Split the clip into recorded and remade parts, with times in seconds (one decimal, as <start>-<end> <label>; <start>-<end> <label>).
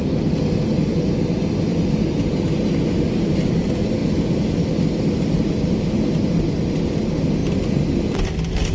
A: 0.0-8.7 recorded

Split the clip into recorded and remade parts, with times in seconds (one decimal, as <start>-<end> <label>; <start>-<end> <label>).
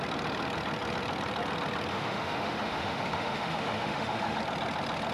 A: 0.0-1.9 recorded; 1.9-4.4 remade; 4.4-5.1 recorded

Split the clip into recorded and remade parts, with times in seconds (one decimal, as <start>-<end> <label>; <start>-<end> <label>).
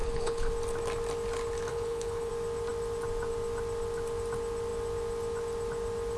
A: 0.0-0.5 remade; 0.5-1.7 recorded; 1.7-2.3 remade; 2.3-6.2 recorded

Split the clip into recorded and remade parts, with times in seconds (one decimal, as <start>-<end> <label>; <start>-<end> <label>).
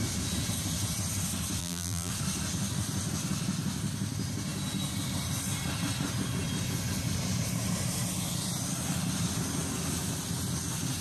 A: 0.0-1.6 recorded; 1.6-2.1 remade; 2.1-11.0 recorded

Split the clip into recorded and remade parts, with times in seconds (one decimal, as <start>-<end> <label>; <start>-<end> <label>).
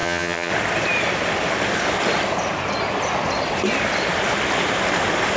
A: 0.0-0.5 remade; 0.5-5.4 recorded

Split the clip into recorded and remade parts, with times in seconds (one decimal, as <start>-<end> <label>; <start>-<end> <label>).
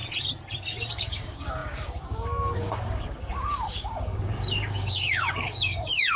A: 0.0-0.9 recorded; 0.9-6.2 remade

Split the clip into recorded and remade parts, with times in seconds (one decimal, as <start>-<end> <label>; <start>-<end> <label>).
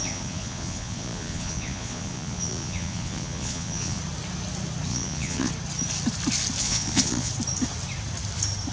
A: 0.0-4.0 remade; 4.0-4.9 recorded; 4.9-5.5 remade; 5.5-6.6 recorded; 6.6-7.3 remade; 7.3-8.7 recorded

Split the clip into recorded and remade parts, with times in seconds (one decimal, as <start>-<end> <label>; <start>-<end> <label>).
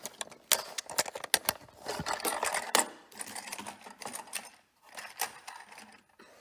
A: 0.0-6.4 recorded